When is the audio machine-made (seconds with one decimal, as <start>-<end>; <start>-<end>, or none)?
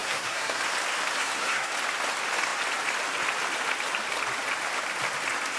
0.0-0.6; 1.2-1.7